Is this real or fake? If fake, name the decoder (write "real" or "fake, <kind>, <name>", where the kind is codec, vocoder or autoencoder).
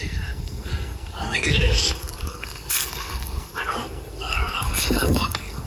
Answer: fake, codec, SNAC